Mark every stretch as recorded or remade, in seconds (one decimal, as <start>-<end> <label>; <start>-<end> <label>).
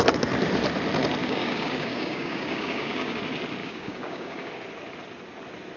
0.0-1.2 recorded; 1.2-3.2 remade; 3.2-3.6 recorded; 3.6-4.5 remade; 4.5-5.8 recorded